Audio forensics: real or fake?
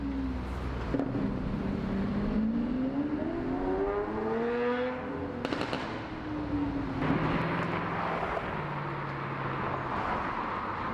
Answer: real